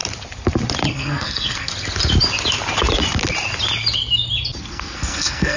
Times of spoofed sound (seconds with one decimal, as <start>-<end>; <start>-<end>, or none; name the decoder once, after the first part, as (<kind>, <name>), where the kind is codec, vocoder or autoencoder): 0.9-1.7 (codec, SNAC); 4.6-5.6